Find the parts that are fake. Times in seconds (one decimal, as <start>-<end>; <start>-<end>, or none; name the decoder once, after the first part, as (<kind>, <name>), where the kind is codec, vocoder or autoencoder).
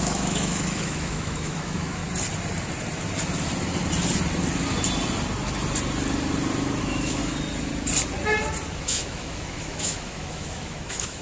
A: 0.0-2.0 (autoencoder, DAC-VAE); 6.8-7.2; 8.8-11.2